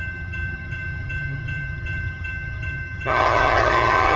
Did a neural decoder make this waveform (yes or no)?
yes